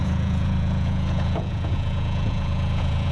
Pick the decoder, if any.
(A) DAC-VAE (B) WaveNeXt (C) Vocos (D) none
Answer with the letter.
C